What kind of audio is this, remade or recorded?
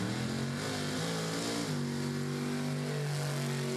recorded